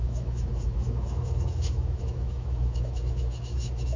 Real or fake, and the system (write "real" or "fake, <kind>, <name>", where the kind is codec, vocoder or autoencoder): fake, autoencoder, DAC-VAE